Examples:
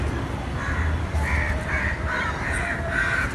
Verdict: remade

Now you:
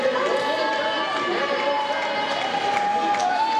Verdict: recorded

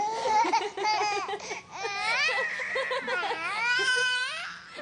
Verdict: remade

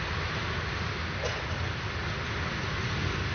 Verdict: recorded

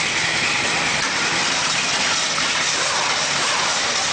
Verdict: remade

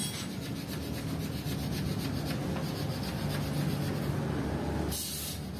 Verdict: recorded